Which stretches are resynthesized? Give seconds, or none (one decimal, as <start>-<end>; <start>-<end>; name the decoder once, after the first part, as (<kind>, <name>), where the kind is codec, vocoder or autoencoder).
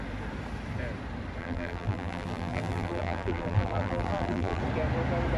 1.4-4.6 (vocoder, BigVGAN v2)